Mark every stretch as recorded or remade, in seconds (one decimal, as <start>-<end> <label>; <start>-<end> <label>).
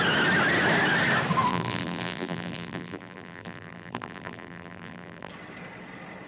0.0-1.5 recorded; 1.5-5.3 remade; 5.3-6.3 recorded